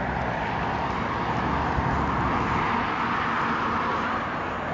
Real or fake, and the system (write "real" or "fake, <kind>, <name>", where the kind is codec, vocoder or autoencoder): real